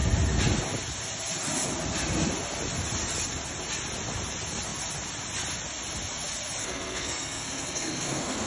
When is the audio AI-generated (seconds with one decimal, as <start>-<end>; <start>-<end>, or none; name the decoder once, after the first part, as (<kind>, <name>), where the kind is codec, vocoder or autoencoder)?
6.6-8.5 (codec, SNAC)